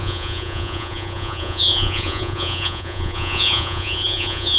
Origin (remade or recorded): remade